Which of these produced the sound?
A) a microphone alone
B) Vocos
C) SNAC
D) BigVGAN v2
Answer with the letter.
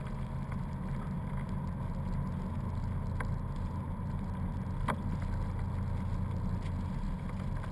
A